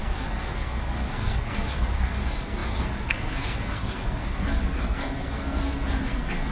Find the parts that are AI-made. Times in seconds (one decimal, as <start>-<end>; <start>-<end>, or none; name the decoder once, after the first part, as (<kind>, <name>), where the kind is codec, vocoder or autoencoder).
0.0-6.5 (codec, SNAC)